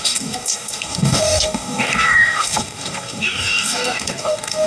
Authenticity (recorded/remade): remade